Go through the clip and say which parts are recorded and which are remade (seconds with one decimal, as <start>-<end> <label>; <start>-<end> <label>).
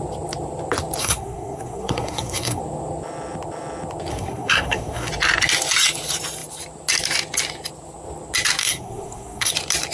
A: 0.0-1.0 recorded; 1.0-2.6 remade; 2.6-4.1 recorded; 4.1-5.1 remade; 5.1-8.6 recorded; 8.6-9.5 remade; 9.5-9.9 recorded